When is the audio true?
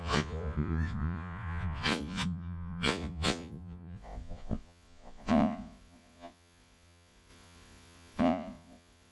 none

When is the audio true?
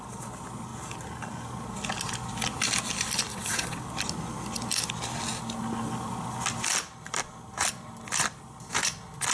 0.0-3.3; 3.9-9.3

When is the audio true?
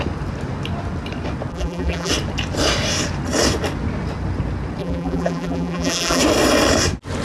0.0-1.5; 2.1-4.8; 6.2-7.2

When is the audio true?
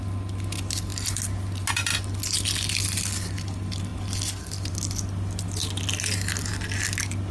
0.0-7.3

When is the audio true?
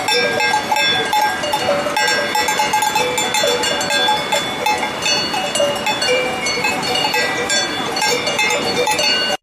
0.0-0.9; 1.6-5.9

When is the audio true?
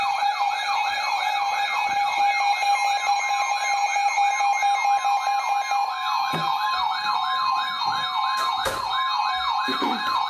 0.0-10.3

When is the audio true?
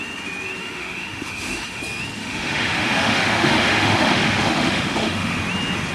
0.0-0.6; 1.8-2.2; 5.4-5.9